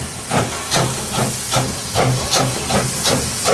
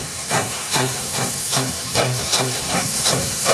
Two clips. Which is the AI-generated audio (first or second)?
second